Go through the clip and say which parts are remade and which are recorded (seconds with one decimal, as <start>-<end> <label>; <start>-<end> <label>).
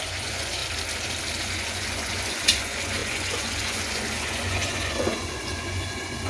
0.0-0.6 remade; 0.6-1.4 recorded; 1.4-6.3 remade